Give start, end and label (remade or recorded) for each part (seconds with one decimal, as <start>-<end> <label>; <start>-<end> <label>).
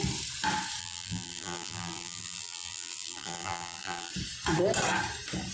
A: 0.0-0.8 recorded; 0.8-4.1 remade; 4.1-5.5 recorded